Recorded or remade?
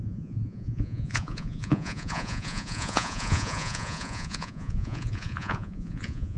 remade